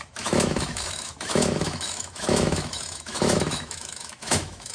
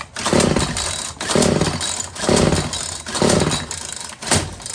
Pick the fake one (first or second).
first